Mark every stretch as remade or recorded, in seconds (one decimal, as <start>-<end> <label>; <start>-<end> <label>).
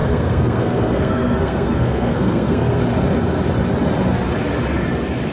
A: 0.0-2.8 remade; 2.8-5.3 recorded